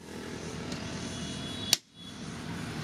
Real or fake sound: real